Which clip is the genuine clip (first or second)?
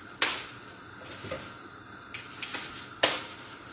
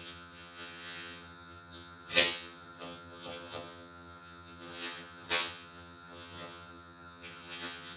first